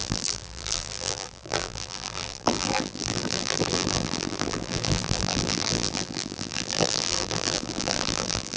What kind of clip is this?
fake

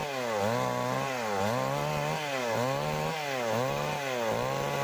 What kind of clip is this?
real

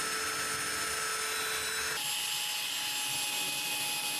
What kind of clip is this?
real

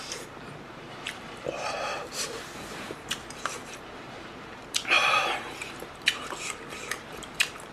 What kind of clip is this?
fake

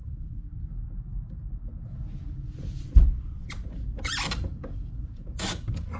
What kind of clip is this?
real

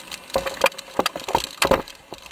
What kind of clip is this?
real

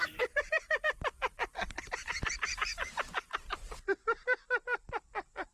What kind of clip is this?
fake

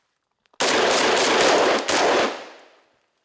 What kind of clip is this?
real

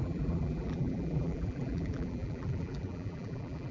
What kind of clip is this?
fake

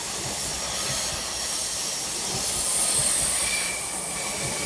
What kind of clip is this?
real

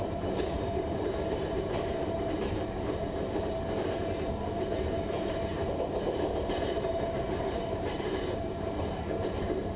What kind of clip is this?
fake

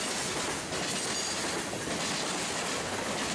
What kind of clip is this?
real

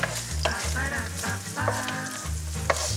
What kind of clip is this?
real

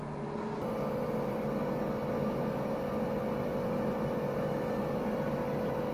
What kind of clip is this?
real